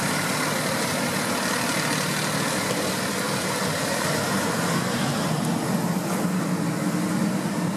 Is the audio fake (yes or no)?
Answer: no